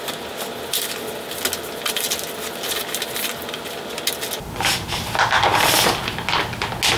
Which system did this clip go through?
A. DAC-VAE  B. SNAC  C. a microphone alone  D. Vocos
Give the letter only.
C